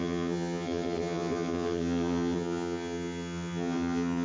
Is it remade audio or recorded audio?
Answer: remade